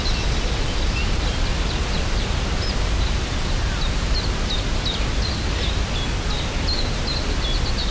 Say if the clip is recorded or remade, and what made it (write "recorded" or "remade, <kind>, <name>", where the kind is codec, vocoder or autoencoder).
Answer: recorded